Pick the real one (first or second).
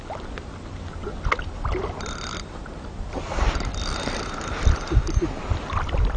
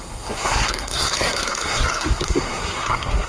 first